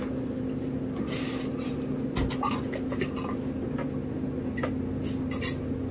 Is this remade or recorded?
recorded